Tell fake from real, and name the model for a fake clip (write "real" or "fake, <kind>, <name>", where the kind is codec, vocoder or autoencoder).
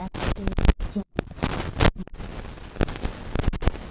real